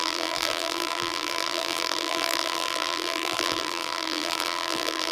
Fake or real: fake